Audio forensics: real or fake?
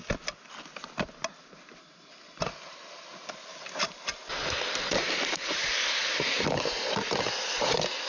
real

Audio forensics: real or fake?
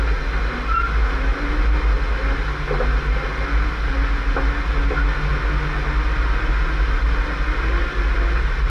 real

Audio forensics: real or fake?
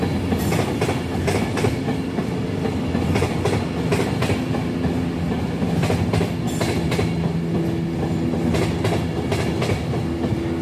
real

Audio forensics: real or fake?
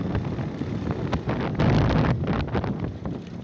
real